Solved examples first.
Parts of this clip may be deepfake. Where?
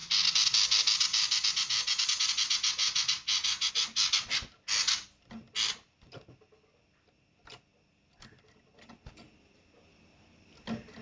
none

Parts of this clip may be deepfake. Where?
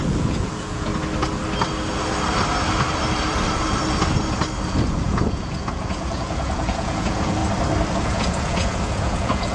0.0-0.9 (vocoder, Vocos); 4.7-7.4; 7.9-9.5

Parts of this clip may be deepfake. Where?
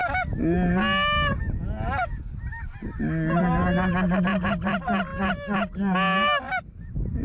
none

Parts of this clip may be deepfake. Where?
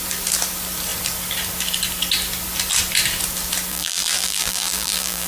3.7-5.3 (vocoder, BigVGAN v2)